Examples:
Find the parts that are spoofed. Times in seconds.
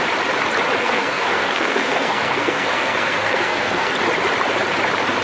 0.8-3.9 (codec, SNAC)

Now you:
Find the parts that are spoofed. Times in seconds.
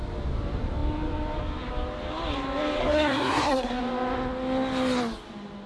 2.8-3.8 (codec, SNAC)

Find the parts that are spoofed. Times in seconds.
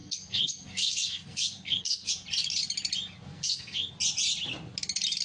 0.0-2.1 (codec, SNAC); 3.3-3.9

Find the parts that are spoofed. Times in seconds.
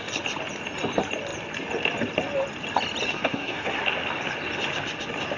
3.1-3.8 (codec, SNAC)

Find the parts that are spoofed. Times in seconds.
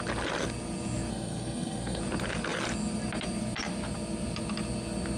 1.1-2.0 (codec, SNAC)